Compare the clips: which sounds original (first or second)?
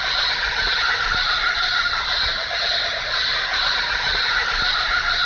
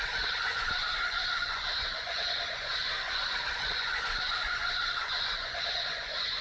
first